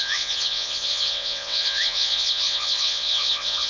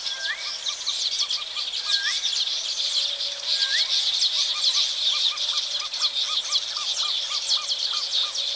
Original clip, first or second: second